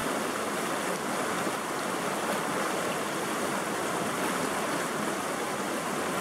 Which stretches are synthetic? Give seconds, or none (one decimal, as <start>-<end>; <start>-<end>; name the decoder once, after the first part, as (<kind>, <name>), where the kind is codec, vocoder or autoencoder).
none